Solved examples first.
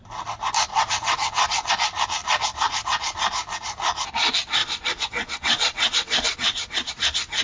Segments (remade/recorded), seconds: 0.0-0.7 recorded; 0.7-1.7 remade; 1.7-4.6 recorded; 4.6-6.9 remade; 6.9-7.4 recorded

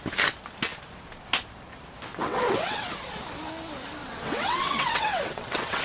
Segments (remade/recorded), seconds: 0.0-2.1 recorded; 2.1-2.9 remade; 2.9-4.0 recorded; 4.0-5.8 remade

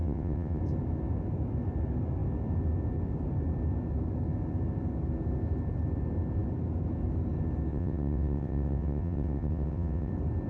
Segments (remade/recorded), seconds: 0.0-0.6 remade; 0.6-7.7 recorded; 7.7-10.1 remade; 10.1-10.5 recorded

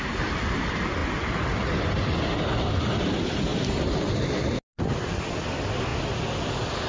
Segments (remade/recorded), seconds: 0.0-6.9 recorded

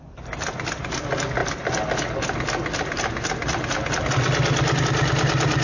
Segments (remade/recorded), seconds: 0.0-5.6 recorded

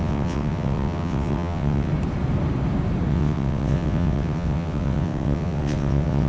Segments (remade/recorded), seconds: 0.0-1.9 remade; 1.9-3.1 recorded; 3.1-6.3 remade

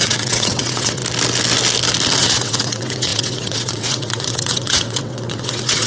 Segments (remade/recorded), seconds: 0.0-1.0 remade; 1.0-2.2 recorded; 2.2-5.9 remade

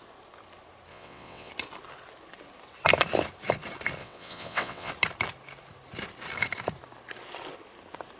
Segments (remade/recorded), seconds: 0.0-0.9 recorded; 0.9-1.5 remade; 1.5-4.0 recorded; 4.0-4.9 remade; 4.9-8.2 recorded